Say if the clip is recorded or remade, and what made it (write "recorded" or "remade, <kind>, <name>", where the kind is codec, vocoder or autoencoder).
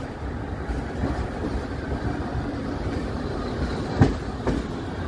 recorded